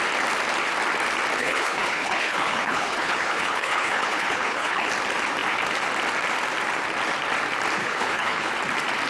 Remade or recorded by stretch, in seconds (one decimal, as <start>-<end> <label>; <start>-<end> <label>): 0.0-1.4 recorded; 1.4-4.9 remade; 4.9-7.8 recorded; 7.8-8.5 remade; 8.5-9.1 recorded